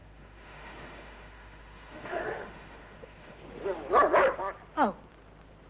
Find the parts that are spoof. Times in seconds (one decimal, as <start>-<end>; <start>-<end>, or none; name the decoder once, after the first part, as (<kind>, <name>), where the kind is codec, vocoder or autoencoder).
0.0-3.4 (autoencoder, DAC-VAE)